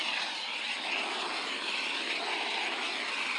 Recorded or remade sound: recorded